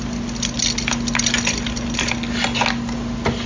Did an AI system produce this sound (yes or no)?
no